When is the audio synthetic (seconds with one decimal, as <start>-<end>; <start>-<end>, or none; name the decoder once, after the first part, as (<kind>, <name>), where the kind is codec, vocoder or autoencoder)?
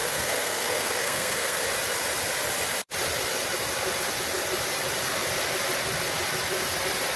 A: 0.0-1.6 (codec, SNAC)